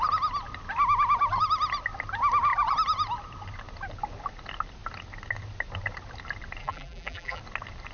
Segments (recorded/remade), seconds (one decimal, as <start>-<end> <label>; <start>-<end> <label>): 0.0-6.6 recorded; 6.6-7.4 remade; 7.4-7.9 recorded